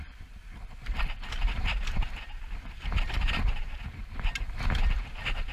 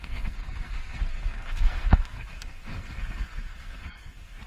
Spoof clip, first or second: second